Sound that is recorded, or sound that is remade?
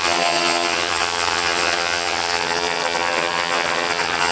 remade